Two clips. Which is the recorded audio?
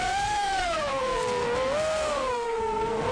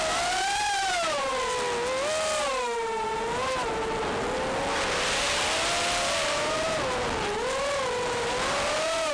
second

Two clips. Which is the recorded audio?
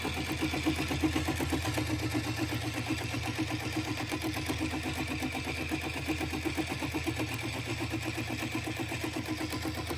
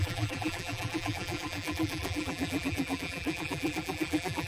first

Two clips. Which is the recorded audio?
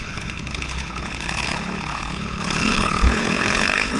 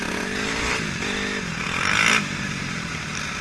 second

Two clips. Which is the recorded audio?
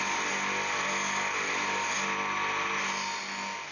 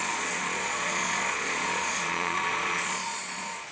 first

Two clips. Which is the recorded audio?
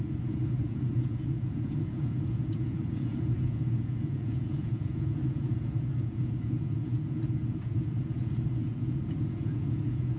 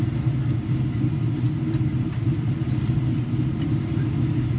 second